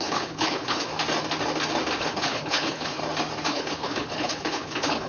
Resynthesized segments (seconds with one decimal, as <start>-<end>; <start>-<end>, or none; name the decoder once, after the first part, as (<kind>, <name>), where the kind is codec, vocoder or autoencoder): 0.0-0.9 (codec, HILCodec); 2.0-3.0; 3.5-5.1